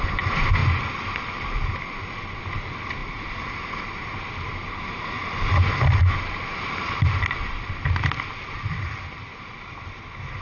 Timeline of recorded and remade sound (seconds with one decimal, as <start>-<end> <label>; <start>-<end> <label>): 0.0-10.4 recorded